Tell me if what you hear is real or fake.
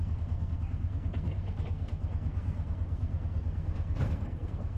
fake